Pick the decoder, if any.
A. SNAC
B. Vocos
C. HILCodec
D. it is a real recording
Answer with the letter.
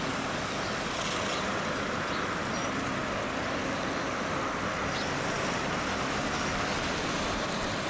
D